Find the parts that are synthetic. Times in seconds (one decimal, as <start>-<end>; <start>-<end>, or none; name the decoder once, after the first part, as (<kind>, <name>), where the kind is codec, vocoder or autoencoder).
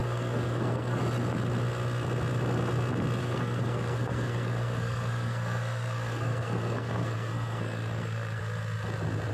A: 0.0-1.0 (codec, SNAC); 3.2-8.4